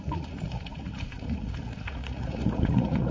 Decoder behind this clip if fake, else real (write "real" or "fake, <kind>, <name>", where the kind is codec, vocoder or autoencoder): fake, vocoder, Vocos